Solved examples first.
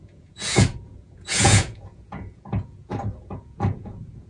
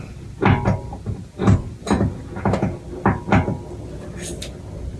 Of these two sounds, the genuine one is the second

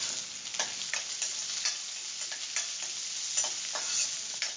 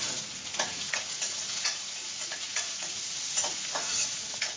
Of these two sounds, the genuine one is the first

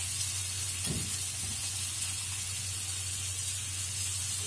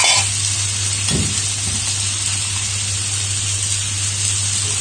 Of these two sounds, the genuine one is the second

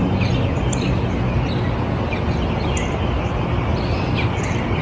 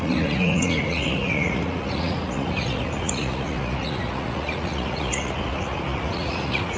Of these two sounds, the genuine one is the first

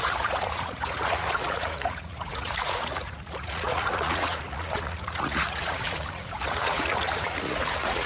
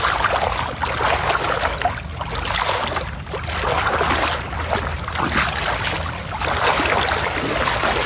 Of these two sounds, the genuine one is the second